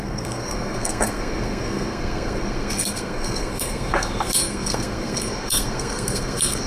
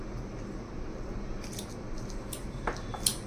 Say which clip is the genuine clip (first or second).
second